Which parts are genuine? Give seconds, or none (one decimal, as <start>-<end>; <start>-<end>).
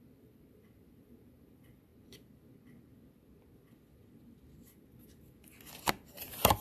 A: 1.9-5.9